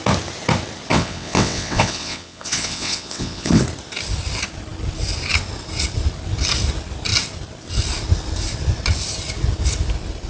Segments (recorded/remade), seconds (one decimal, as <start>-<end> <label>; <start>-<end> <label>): 0.0-0.9 recorded; 0.9-3.6 remade; 3.6-10.3 recorded